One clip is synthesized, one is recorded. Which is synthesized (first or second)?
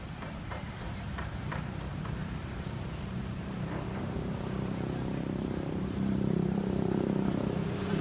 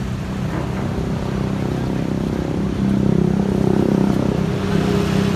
first